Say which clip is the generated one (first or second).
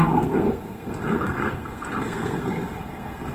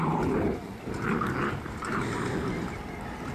first